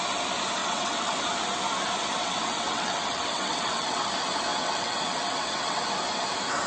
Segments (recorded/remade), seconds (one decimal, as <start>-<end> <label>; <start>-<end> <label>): 0.0-0.6 recorded; 0.6-1.2 remade; 1.2-2.2 recorded; 2.2-4.1 remade; 4.1-4.5 recorded; 4.5-5.9 remade; 5.9-6.7 recorded